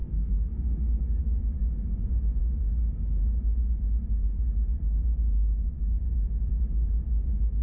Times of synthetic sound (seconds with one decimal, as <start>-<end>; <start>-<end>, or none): 0.0-1.2